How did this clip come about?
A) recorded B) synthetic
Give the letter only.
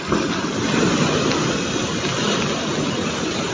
A